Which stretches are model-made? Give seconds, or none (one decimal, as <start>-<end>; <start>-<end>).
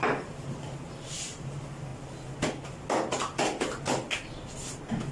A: 0.0-1.9